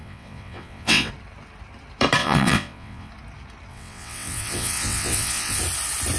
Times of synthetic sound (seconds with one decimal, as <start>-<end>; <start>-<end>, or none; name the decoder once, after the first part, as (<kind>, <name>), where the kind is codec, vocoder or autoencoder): 0.0-1.1 (vocoder, WaveNeXt); 2.2-3.1; 3.7-5.6